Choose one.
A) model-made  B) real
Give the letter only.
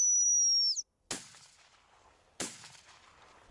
B